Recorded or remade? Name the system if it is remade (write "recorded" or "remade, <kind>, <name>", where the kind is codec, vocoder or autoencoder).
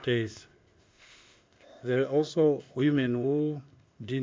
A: remade, codec, ZipCodec